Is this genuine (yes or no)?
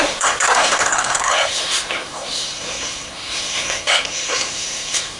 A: no